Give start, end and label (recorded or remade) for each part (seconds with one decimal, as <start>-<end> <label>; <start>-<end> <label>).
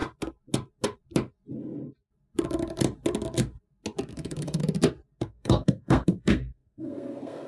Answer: 0.0-4.1 recorded; 4.1-4.6 remade; 4.6-5.2 recorded; 5.2-7.5 remade